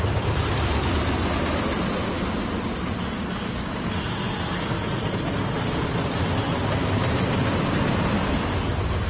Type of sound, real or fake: real